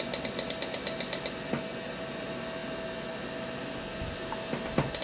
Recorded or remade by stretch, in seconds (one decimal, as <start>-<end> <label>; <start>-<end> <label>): 0.0-5.0 recorded